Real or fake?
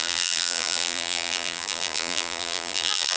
fake